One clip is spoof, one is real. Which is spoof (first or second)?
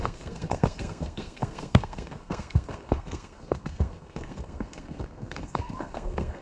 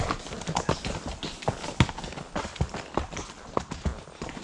first